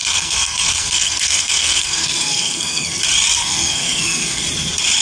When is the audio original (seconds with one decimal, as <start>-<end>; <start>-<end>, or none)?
3.0-3.4; 4.4-5.0